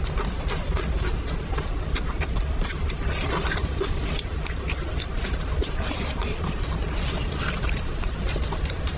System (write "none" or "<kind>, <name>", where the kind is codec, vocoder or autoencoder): none